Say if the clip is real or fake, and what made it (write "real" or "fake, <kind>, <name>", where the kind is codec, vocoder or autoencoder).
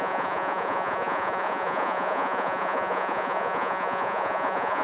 fake, vocoder, Vocos